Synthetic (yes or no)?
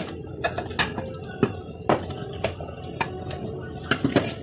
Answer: no